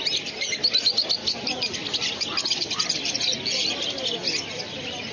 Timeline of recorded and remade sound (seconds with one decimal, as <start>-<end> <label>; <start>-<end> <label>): 0.0-5.1 recorded